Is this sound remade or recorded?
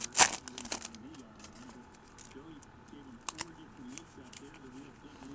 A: recorded